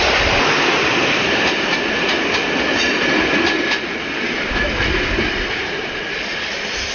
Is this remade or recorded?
recorded